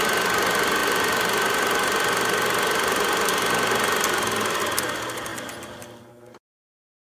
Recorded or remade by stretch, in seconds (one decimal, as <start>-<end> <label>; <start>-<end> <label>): 0.0-7.1 recorded